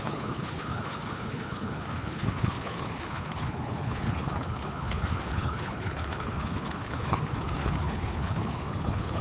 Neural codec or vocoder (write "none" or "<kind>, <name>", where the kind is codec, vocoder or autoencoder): codec, HILCodec